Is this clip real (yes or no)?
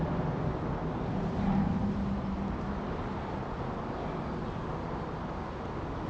yes